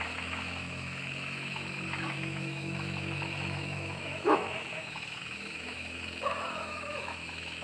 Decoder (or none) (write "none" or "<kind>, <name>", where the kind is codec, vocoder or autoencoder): autoencoder, DAC-VAE